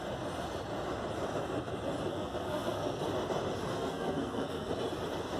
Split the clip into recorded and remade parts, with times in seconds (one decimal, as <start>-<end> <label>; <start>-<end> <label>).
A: 0.0-2.1 recorded; 2.1-3.0 remade; 3.0-3.7 recorded; 3.7-4.7 remade; 4.7-5.4 recorded